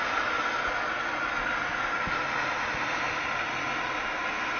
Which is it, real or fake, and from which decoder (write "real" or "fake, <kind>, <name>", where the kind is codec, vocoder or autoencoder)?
real